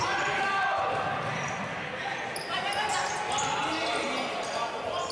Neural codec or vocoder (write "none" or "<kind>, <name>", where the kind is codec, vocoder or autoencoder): none